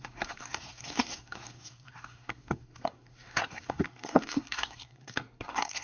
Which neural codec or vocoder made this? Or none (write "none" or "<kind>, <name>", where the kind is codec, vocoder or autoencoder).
codec, SNAC